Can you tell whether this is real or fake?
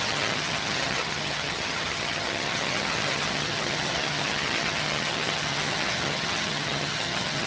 fake